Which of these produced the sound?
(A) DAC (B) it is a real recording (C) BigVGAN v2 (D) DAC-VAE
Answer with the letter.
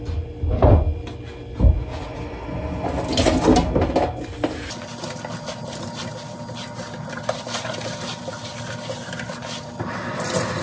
B